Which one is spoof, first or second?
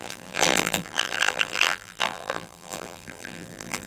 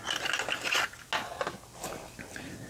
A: first